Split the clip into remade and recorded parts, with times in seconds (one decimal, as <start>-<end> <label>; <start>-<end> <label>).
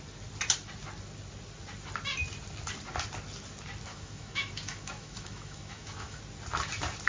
0.0-3.9 recorded; 3.9-6.2 remade; 6.2-7.1 recorded